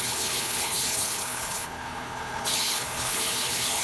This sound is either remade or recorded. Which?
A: remade